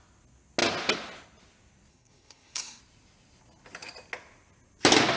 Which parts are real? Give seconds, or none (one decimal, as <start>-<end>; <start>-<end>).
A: 0.0-1.9; 2.8-5.2